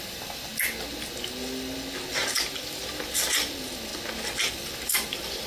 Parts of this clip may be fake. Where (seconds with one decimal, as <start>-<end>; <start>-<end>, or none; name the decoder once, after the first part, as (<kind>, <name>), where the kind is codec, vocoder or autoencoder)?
0.0-0.5 (vocoder, BigVGAN v2); 2.1-3.9; 4.5-5.5